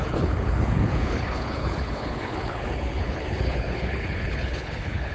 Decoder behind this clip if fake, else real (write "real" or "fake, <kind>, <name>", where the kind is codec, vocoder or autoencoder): fake, codec, HILCodec